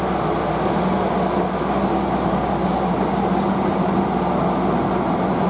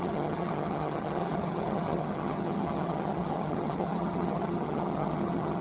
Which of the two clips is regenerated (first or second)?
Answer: second